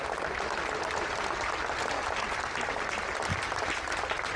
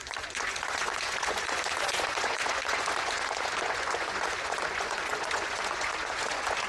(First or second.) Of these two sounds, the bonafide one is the first